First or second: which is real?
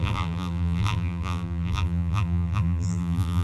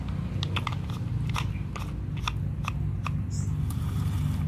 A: second